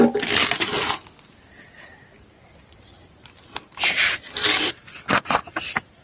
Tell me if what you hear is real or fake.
real